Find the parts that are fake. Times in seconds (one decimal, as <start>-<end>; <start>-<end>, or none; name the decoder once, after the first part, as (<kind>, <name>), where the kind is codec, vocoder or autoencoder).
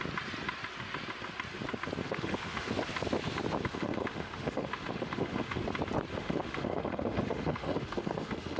2.0-2.7 (autoencoder, DAC-VAE); 3.7-5.6; 6.1-8.6